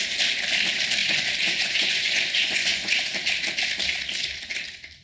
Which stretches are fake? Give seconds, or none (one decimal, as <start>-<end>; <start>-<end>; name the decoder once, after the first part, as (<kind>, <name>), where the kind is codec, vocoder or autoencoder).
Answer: 1.0-2.9 (vocoder, Vocos)